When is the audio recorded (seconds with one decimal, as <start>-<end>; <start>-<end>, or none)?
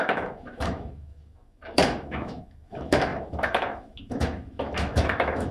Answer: none